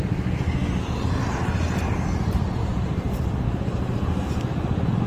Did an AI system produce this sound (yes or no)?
no